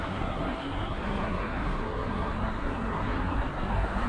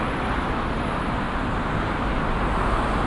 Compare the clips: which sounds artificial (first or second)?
first